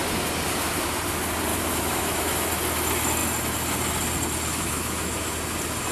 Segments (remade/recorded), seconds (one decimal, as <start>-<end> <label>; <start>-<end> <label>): 0.0-1.5 recorded; 1.5-2.5 remade; 2.5-4.5 recorded; 4.5-5.3 remade; 5.3-5.9 recorded